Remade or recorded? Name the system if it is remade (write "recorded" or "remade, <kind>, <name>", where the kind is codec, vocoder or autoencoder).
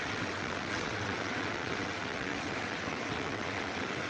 remade, vocoder, WaveNeXt